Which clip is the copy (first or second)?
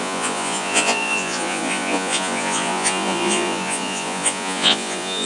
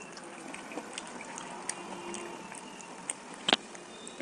first